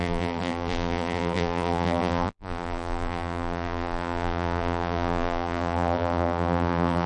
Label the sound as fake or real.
fake